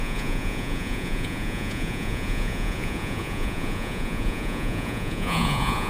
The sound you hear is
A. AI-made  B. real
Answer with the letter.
A